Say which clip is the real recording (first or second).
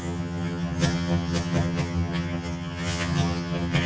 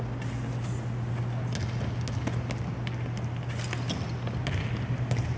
second